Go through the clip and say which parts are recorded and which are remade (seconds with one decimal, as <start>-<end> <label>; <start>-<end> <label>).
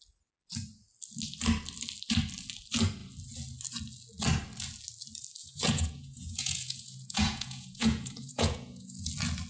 0.0-5.4 recorded; 5.4-9.1 remade; 9.1-9.5 recorded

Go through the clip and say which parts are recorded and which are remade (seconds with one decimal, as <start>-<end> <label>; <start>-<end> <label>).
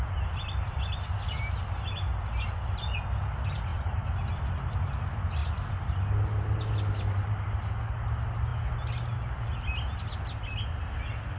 0.0-11.4 recorded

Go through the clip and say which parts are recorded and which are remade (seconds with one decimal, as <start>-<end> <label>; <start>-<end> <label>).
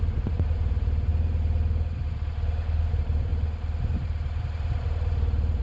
0.0-1.1 remade; 1.1-2.9 recorded; 2.9-3.3 remade; 3.3-4.4 recorded; 4.4-5.6 remade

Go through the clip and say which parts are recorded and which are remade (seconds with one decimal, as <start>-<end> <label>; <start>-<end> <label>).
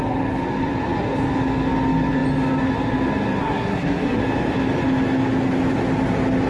0.0-3.4 recorded; 3.4-4.2 remade; 4.2-6.5 recorded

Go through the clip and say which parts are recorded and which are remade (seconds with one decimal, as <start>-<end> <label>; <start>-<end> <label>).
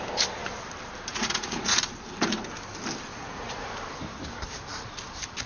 0.0-1.1 recorded; 1.1-1.8 remade; 1.8-3.1 recorded; 3.1-3.7 remade; 3.7-5.5 recorded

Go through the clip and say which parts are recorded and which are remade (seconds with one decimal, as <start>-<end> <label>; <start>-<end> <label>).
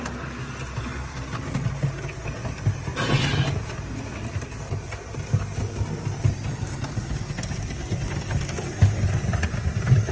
0.0-10.1 recorded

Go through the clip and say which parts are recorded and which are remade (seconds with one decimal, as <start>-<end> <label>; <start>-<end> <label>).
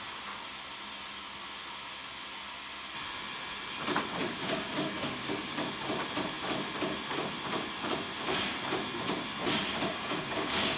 0.0-4.2 recorded; 4.2-5.7 remade; 5.7-9.7 recorded; 9.7-10.8 remade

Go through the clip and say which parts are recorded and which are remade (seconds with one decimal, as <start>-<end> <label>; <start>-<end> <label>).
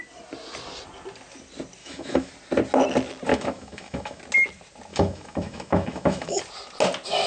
0.0-1.8 recorded; 1.8-2.3 remade; 2.3-3.3 recorded; 3.3-4.2 remade; 4.2-4.9 recorded; 4.9-6.4 remade; 6.4-7.3 recorded